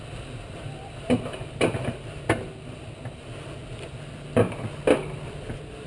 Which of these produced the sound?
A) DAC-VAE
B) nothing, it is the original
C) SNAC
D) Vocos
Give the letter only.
B